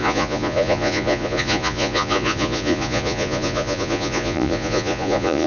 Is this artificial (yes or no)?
yes